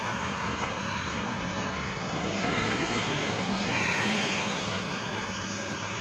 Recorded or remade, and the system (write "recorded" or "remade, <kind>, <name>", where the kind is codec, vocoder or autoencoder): remade, codec, SNAC